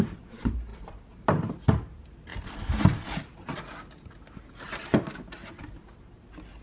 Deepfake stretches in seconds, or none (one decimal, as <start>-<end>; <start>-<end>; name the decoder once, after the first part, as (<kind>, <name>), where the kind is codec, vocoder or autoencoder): none

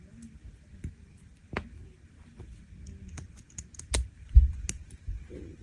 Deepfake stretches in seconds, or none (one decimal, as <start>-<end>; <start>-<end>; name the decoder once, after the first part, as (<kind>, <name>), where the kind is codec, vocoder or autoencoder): none